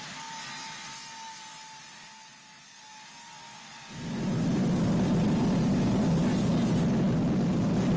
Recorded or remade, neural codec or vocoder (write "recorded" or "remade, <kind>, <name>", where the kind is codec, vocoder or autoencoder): recorded